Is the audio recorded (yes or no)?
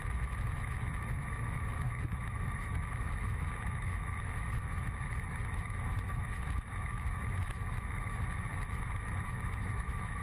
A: no